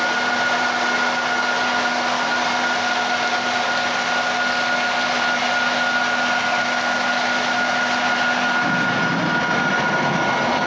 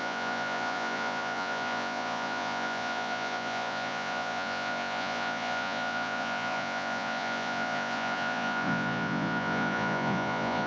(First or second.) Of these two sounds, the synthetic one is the second